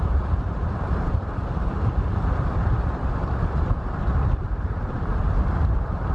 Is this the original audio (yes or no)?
no